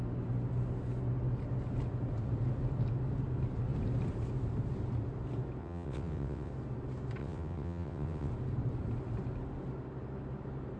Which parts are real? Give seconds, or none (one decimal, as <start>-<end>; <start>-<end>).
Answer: 0.0-5.6; 6.5-7.2; 8.3-10.8